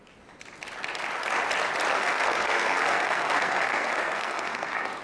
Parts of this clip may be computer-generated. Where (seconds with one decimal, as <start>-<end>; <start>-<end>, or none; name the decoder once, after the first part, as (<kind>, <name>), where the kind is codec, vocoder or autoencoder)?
1.9-5.0 (codec, SNAC)